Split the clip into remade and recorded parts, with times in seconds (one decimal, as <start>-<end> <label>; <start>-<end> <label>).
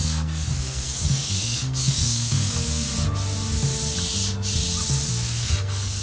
0.0-2.9 remade; 2.9-5.1 recorded; 5.1-6.0 remade